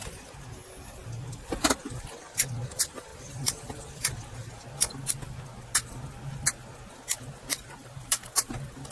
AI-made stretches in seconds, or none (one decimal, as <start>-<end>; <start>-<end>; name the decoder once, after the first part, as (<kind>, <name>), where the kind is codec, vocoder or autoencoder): 1.0-1.8 (vocoder, BigVGAN v2); 7.8-8.5